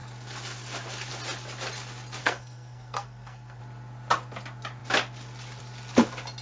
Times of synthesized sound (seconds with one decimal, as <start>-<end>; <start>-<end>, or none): 2.2-3.6